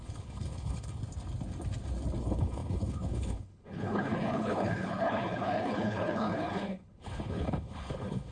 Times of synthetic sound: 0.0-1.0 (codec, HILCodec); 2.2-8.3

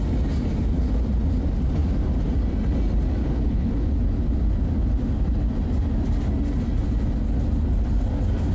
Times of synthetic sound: 3.2-3.7 (codec, HILCodec)

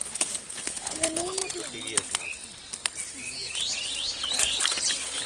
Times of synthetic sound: 0.0-1.4 (codec, HILCodec); 4.6-5.3

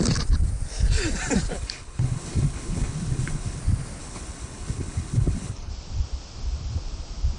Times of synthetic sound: 1.5-3.6 (codec, HILCodec); 4.0-5.7